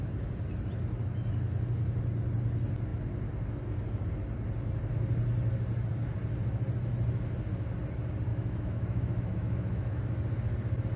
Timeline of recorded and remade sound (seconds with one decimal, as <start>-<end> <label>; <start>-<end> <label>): 0.0-8.3 recorded; 8.3-10.0 remade; 10.0-11.0 recorded